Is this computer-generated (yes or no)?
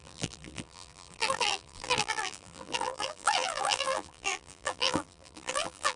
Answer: yes